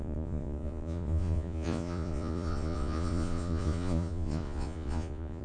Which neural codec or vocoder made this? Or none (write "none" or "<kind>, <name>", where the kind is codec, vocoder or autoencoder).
vocoder, Vocos